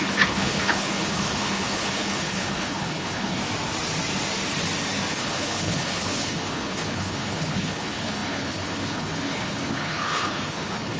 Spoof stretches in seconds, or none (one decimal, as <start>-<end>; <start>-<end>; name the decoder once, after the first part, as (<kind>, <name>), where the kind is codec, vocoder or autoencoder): 0.0-3.4 (codec, HILCodec); 5.1-11.0